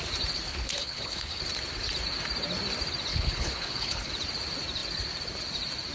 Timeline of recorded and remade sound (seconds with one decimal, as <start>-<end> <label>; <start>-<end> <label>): 0.0-0.5 recorded; 0.5-1.4 remade; 1.4-3.1 recorded; 3.1-4.1 remade; 4.1-5.9 recorded

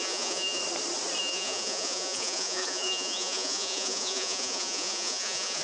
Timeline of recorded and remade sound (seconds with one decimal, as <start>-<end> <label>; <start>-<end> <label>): 0.0-0.6 remade; 0.6-1.2 recorded; 1.2-5.6 remade